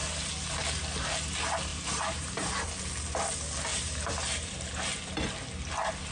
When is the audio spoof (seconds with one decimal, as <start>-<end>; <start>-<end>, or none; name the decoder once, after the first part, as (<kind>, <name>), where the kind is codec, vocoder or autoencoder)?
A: 1.7-2.7 (vocoder, BigVGAN v2); 3.7-4.7